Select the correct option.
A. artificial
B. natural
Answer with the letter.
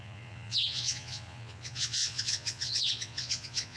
A